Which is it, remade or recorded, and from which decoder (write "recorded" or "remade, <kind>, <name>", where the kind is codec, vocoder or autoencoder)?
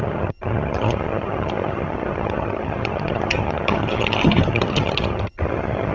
remade, vocoder, HiFi-GAN